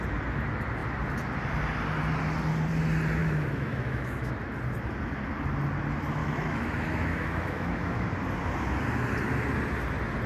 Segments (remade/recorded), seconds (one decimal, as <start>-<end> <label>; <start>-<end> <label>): 0.0-3.2 recorded; 3.2-4.3 remade; 4.3-6.2 recorded; 6.2-8.1 remade; 8.1-10.3 recorded